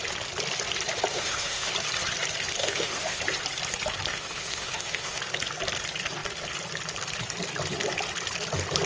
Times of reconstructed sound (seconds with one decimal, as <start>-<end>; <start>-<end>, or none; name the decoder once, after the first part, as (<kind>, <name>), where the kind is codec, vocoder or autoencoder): 1.1-1.7 (autoencoder, DAC-VAE); 2.6-3.2; 4.1-5.2

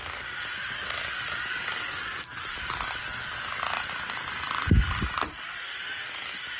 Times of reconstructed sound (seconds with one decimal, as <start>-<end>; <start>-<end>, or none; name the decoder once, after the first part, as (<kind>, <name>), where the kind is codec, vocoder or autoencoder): 1.5-2.3 (codec, DAC)

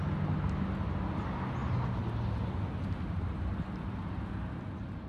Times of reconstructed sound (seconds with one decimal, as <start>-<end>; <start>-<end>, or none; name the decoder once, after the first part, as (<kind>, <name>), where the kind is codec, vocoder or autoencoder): none

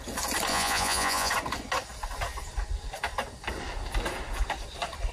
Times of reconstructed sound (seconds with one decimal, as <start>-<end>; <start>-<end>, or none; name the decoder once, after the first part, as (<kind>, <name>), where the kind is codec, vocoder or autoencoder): 0.5-1.3 (vocoder, Vocos)

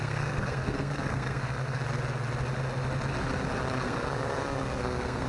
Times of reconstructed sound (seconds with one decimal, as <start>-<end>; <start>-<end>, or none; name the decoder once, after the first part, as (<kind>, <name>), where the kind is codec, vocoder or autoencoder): 0.0-1.8 (codec, SNAC); 3.8-5.3

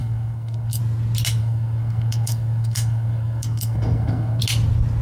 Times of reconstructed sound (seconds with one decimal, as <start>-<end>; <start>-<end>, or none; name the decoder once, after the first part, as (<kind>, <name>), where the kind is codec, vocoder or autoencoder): 0.0-0.8 (codec, SNAC); 1.4-4.4